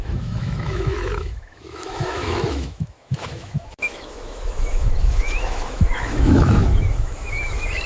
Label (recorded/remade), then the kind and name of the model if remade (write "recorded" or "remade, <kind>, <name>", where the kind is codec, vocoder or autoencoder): remade, autoencoder, DAC-VAE